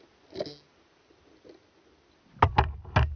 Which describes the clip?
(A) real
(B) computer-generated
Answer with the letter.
A